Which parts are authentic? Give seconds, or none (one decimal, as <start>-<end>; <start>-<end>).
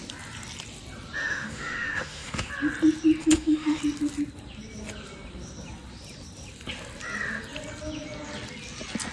0.0-1.2; 2.5-3.2; 3.8-9.1